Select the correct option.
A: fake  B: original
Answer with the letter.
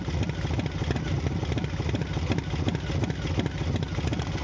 B